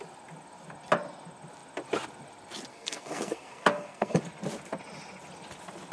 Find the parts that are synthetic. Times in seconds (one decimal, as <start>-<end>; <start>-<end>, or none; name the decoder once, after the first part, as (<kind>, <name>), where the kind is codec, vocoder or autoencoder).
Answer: 2.7-4.2 (codec, SNAC)